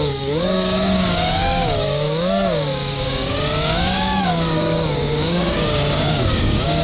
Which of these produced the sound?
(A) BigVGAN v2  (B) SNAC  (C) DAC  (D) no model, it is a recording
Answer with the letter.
C